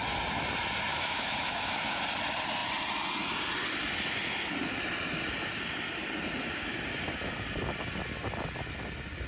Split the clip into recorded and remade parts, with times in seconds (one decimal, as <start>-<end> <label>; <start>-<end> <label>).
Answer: 0.0-0.9 recorded; 0.9-2.0 remade; 2.0-9.3 recorded